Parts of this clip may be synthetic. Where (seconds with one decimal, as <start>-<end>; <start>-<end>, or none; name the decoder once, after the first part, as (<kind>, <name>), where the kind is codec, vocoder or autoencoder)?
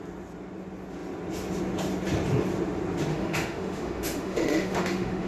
3.1-5.3 (autoencoder, DAC-VAE)